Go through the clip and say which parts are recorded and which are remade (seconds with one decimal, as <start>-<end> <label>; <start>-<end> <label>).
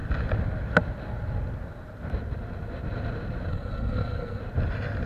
0.0-3.5 recorded; 3.5-4.4 remade; 4.4-5.1 recorded